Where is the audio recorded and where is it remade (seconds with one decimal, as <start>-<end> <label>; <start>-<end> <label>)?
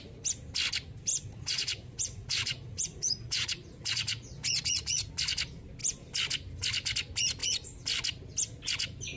0.0-1.1 recorded; 1.1-5.1 remade; 5.1-9.2 recorded